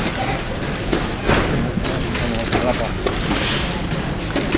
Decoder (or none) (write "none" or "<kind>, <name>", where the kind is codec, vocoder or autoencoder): none